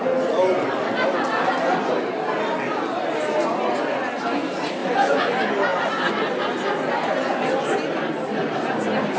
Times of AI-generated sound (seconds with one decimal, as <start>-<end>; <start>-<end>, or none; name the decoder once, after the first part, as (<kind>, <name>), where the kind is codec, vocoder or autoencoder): 4.8-5.3 (vocoder, Vocos)